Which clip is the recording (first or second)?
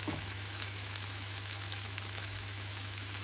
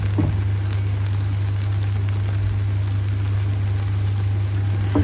second